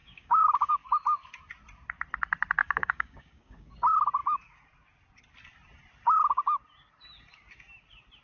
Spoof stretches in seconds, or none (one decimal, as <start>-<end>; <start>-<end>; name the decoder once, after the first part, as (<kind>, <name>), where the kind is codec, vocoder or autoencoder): 0.0-0.7 (codec, DAC); 2.6-3.7